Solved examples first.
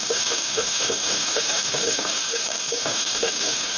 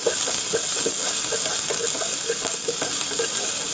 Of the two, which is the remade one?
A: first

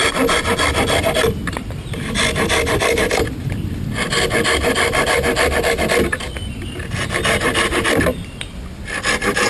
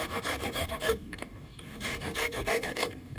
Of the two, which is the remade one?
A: second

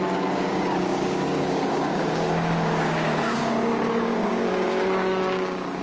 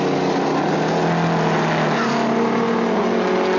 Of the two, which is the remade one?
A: first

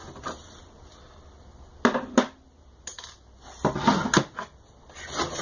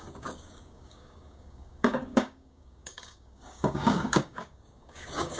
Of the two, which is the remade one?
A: second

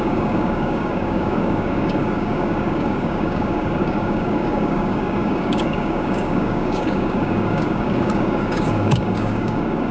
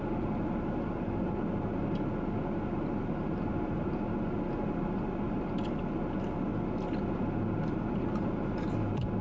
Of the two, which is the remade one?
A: first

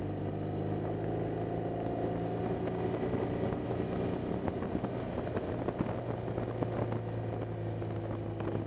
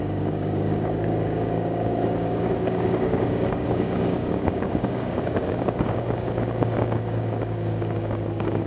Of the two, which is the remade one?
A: second